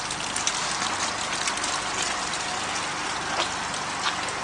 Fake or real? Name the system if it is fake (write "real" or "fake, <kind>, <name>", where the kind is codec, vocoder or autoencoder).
real